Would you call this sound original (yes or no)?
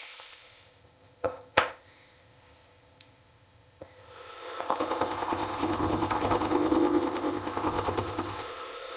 no